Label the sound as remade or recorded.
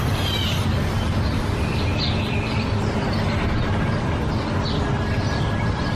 recorded